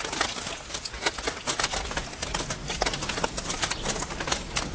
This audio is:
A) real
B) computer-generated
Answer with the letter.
A